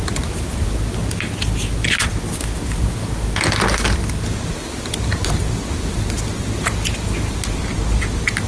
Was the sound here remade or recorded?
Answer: recorded